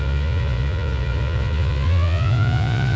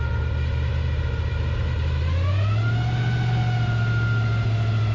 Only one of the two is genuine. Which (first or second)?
second